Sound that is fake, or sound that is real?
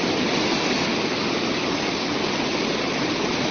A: real